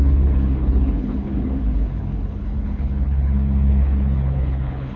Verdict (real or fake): fake